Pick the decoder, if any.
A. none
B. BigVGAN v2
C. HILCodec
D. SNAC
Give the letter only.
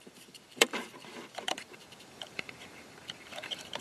B